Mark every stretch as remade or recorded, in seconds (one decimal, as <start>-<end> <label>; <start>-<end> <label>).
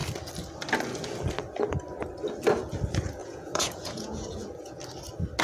0.0-3.2 recorded; 3.2-4.8 remade; 4.8-5.4 recorded